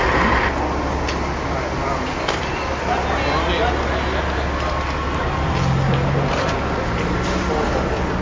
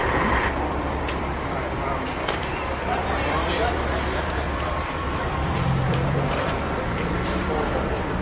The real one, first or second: first